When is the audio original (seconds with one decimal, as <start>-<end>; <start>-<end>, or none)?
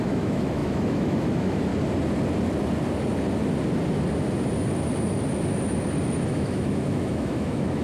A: 1.7-6.2